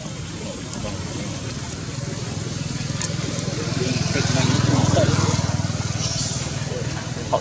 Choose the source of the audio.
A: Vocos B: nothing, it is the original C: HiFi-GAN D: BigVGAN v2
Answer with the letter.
B